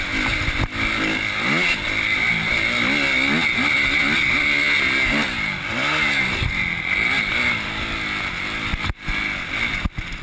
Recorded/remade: recorded